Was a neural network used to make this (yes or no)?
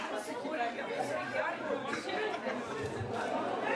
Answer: no